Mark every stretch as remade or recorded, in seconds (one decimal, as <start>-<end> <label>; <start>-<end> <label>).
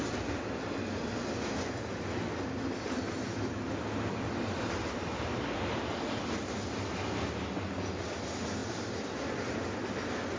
0.0-10.4 recorded